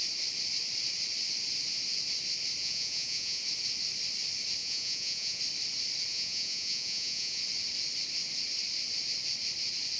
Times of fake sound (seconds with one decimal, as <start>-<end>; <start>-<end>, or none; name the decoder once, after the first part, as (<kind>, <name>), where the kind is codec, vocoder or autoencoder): 2.6-3.4 (vocoder, Vocos); 4.6-5.4; 6.1-7.4